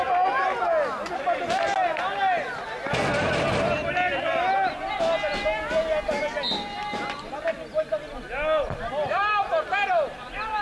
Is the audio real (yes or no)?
yes